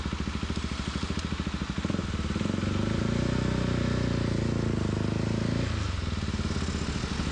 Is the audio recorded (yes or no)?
yes